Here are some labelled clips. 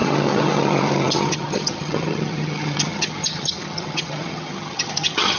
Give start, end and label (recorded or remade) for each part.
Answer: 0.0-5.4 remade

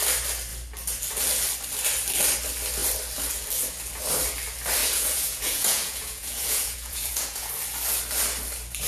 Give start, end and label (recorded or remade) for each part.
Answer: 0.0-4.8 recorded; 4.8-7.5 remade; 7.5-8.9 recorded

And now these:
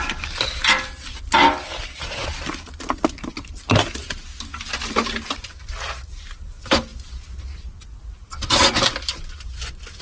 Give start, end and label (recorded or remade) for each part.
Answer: 0.0-10.0 recorded

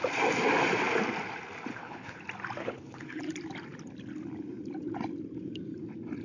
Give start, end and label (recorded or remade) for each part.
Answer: 0.0-1.7 recorded; 1.7-2.2 remade; 2.2-2.6 recorded; 2.6-3.2 remade; 3.2-6.2 recorded

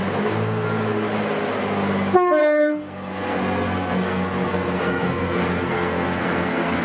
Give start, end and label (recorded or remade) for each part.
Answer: 0.0-2.4 recorded; 2.4-6.8 remade